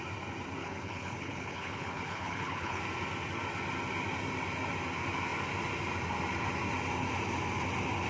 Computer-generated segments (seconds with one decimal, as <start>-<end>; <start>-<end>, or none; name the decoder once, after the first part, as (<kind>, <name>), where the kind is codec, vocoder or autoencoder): 0.6-2.8 (codec, HILCodec)